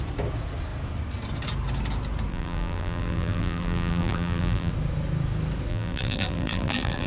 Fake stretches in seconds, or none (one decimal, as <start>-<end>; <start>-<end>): 2.3-4.7; 5.7-7.1